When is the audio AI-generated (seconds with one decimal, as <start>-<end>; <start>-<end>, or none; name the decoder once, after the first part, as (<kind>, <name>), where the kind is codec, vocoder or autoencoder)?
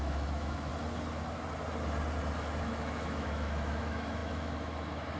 0.0-0.7 (autoencoder, DAC-VAE); 2.6-5.2